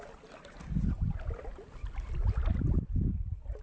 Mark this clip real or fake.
real